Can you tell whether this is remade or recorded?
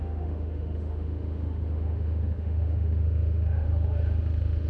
remade